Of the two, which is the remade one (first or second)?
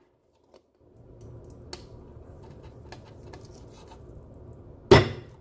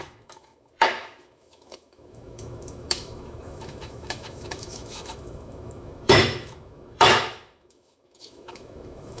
second